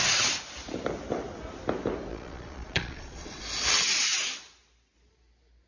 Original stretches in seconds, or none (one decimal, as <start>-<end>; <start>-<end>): 0.0-2.1; 3.4-5.7